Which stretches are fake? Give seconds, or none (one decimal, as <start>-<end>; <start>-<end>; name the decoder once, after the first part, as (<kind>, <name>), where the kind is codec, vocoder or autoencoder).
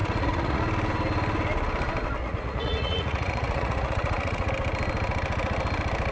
0.0-0.6 (vocoder, Vocos); 2.2-4.5